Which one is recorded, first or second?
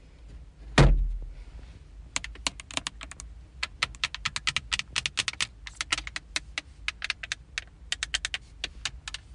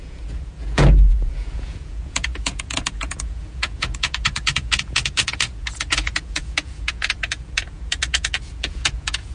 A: first